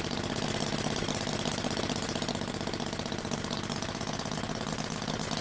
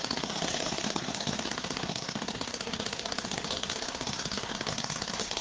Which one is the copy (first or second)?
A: second